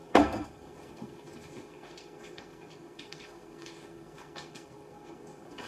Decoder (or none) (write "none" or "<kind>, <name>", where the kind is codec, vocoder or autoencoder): codec, SNAC